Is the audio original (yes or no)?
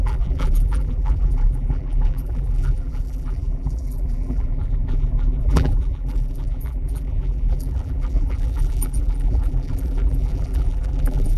no